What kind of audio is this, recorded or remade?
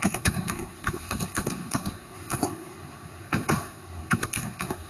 remade